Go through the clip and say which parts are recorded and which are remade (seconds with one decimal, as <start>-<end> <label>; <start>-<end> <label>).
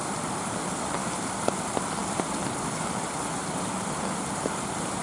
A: 0.0-5.0 recorded